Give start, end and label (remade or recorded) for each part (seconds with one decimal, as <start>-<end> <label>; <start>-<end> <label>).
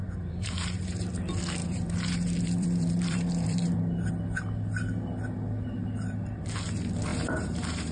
0.0-1.1 remade; 1.1-1.6 recorded; 1.6-4.1 remade; 4.1-7.1 recorded; 7.1-7.9 remade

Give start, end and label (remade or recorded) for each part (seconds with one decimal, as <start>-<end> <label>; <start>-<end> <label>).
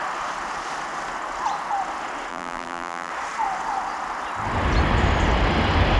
0.0-2.3 recorded; 2.3-3.1 remade; 3.1-6.0 recorded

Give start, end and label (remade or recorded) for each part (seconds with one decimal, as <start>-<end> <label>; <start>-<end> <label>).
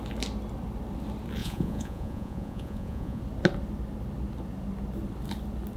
0.0-1.4 recorded; 1.4-3.2 remade; 3.2-5.8 recorded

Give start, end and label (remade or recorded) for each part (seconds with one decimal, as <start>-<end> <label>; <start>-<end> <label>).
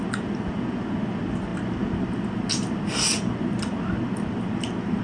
0.0-5.0 recorded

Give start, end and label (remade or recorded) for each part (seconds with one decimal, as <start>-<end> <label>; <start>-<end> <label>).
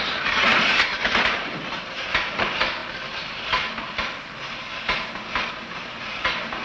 0.0-6.6 recorded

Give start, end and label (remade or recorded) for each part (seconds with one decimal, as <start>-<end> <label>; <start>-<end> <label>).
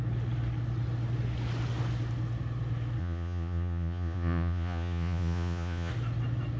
0.0-3.0 recorded; 3.0-5.9 remade; 5.9-6.6 recorded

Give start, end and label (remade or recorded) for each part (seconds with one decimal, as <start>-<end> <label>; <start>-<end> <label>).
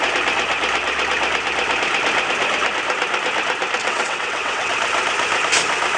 0.0-3.8 recorded; 3.8-4.7 remade; 4.7-6.0 recorded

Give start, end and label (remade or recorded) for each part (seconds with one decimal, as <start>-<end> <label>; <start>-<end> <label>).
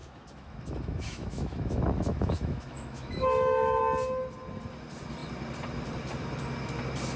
0.0-3.8 remade; 3.8-7.2 recorded